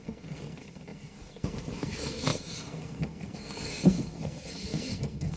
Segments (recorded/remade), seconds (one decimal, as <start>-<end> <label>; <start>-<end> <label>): 0.0-5.4 remade